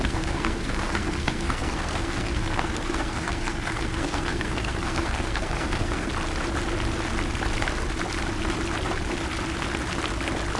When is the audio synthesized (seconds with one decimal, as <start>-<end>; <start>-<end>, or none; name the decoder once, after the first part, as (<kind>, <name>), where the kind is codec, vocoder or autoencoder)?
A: 0.0-6.1 (codec, SNAC)